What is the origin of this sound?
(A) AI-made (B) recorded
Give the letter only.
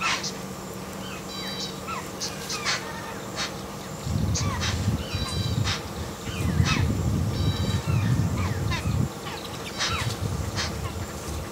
B